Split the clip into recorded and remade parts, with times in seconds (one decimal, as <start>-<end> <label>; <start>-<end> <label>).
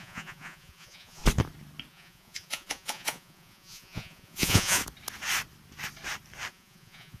0.0-1.2 remade; 1.2-1.9 recorded; 1.9-4.8 remade; 4.8-6.5 recorded; 6.5-7.2 remade